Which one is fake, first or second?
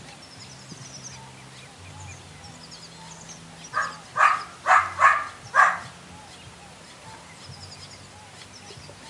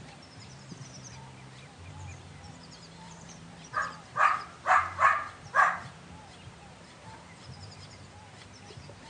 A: second